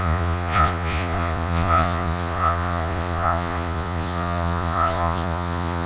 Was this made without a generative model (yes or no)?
no